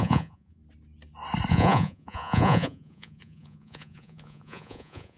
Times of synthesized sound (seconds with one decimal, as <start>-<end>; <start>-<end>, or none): 0.0-0.6; 1.5-5.2